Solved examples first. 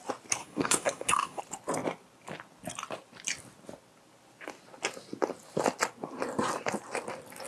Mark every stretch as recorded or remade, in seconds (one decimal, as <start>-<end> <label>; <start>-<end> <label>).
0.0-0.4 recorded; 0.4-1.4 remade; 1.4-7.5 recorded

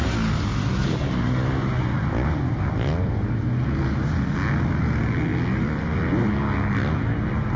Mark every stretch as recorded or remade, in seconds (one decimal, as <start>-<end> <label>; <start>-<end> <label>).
0.0-7.6 recorded

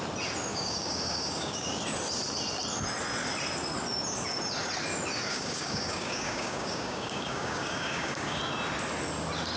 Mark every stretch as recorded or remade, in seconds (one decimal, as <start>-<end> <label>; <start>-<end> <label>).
0.0-0.5 recorded; 0.5-1.8 remade; 1.8-5.3 recorded; 5.3-8.4 remade; 8.4-9.6 recorded

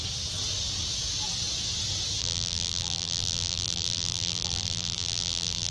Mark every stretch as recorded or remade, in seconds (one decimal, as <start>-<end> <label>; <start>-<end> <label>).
0.0-2.2 recorded; 2.2-5.7 remade

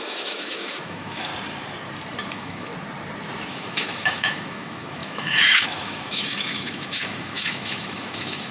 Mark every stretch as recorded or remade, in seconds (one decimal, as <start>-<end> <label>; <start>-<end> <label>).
0.0-1.3 remade; 1.3-2.3 recorded; 2.3-2.7 remade; 2.7-3.5 recorded; 3.5-8.5 remade

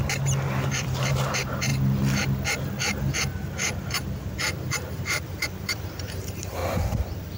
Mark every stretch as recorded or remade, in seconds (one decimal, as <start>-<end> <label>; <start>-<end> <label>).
0.0-1.7 remade; 1.7-4.9 recorded; 4.9-6.6 remade; 6.6-7.4 recorded

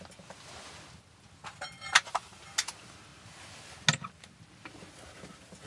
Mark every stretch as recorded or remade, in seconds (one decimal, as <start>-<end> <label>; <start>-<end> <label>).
0.0-5.7 recorded